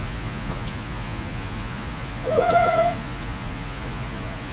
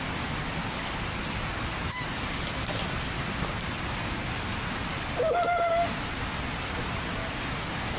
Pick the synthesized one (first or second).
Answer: first